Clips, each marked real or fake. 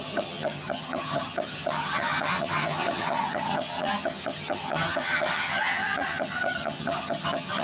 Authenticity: fake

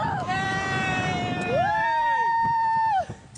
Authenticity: fake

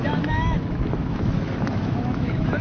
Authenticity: fake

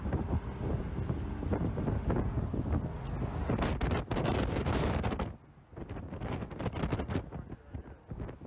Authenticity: real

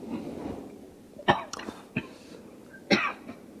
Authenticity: real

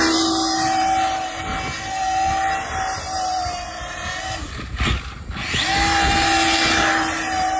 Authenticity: real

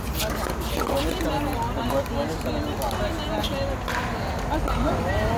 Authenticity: real